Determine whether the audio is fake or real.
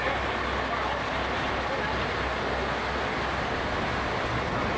real